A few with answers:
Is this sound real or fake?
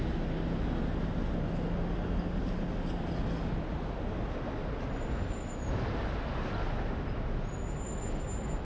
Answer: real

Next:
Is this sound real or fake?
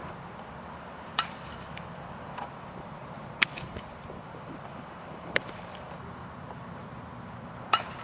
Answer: fake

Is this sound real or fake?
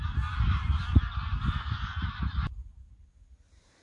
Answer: real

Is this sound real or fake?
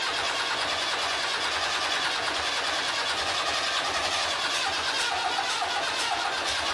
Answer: fake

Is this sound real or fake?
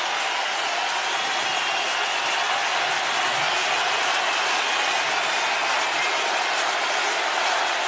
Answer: real